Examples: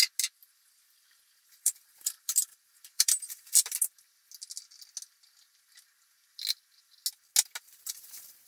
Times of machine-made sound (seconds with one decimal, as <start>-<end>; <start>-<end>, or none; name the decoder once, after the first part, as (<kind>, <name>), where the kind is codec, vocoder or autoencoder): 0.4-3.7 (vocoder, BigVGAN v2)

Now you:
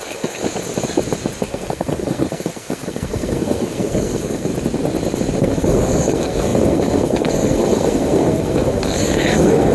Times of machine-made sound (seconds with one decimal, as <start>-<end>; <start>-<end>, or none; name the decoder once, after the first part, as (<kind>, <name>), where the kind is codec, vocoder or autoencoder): 0.0-0.4 (codec, SNAC); 1.5-4.5; 5.4-9.7

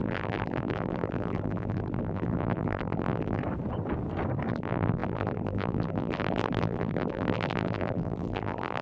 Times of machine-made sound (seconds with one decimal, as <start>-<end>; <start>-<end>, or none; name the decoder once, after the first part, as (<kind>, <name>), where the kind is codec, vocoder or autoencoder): 0.0-3.4 (vocoder, BigVGAN v2); 4.5-8.8